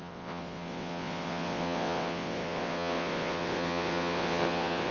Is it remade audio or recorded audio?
remade